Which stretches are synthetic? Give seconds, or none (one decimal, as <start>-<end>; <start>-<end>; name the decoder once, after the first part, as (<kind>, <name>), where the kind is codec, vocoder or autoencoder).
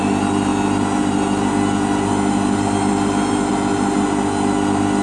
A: none